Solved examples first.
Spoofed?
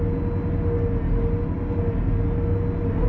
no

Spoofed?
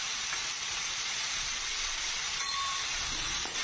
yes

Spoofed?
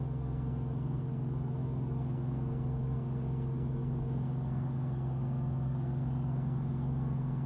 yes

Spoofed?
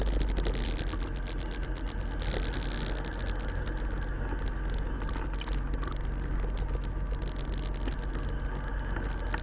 no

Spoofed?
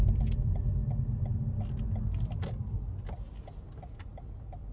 no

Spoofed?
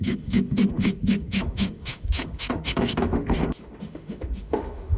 yes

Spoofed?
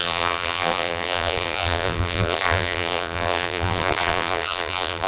yes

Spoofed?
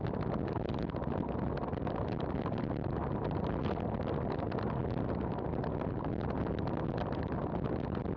no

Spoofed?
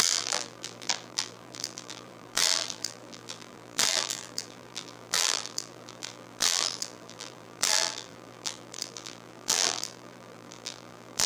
yes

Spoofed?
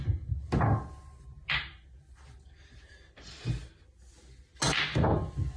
no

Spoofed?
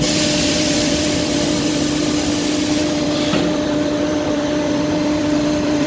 yes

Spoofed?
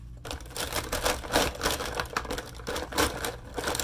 no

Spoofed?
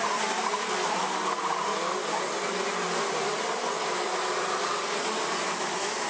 no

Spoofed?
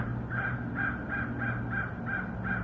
no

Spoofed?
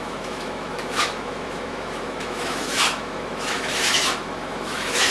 yes